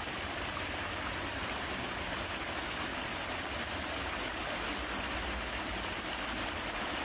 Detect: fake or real real